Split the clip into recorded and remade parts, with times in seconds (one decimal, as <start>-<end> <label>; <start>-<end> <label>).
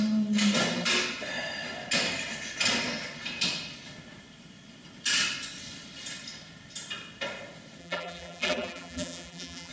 0.0-7.8 recorded; 7.8-9.7 remade